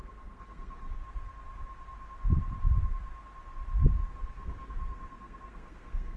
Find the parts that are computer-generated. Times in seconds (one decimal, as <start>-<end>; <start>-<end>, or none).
0.0-1.0; 4.1-6.2